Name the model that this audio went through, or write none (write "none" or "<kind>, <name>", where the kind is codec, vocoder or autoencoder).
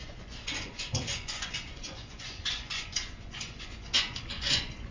vocoder, Vocos